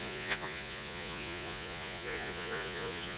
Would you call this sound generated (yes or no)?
yes